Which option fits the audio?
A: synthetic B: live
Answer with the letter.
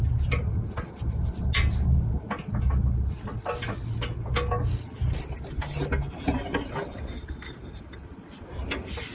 B